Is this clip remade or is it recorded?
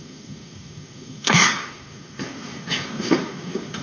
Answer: remade